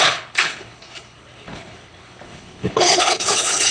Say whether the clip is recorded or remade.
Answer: remade